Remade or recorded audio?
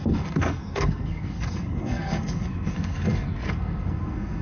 remade